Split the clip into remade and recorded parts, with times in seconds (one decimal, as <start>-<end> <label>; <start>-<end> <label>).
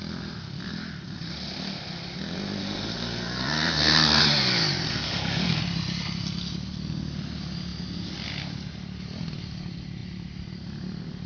0.0-2.6 recorded; 2.6-4.2 remade; 4.2-4.9 recorded; 4.9-5.6 remade; 5.6-11.3 recorded